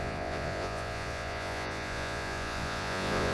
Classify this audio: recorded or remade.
remade